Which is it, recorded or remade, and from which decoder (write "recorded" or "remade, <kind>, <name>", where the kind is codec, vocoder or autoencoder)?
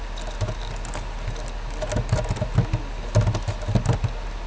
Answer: recorded